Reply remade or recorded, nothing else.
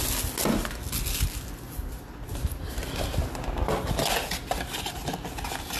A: recorded